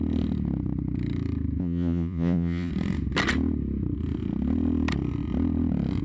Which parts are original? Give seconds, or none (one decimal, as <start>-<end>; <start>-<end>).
0.0-1.6; 2.7-6.0